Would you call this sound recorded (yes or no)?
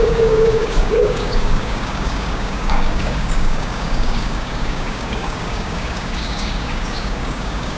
no